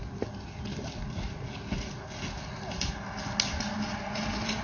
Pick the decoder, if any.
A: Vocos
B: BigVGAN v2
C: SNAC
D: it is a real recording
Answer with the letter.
D